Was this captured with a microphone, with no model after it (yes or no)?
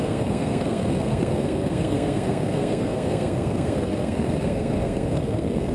no